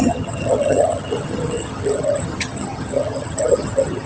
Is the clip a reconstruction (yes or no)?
yes